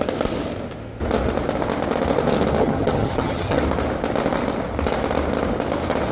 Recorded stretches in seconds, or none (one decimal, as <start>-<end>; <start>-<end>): 0.0-2.6; 3.6-6.1